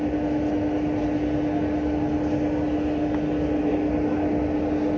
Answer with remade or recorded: recorded